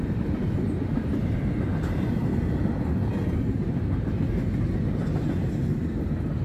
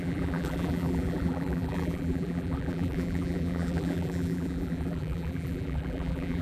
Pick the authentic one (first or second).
first